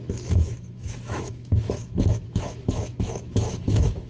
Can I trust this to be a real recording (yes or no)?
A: no